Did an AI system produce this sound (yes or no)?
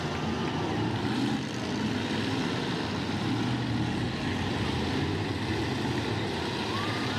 no